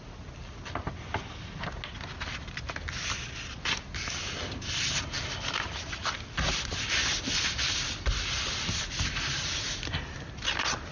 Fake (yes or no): no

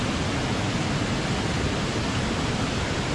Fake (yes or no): no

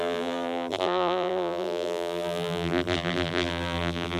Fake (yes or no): yes